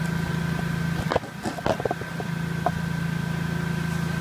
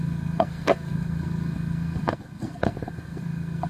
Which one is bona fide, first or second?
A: first